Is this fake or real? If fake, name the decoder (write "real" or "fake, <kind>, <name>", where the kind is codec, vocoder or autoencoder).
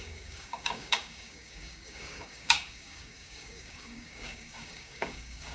fake, codec, DAC